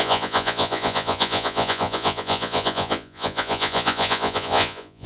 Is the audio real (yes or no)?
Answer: no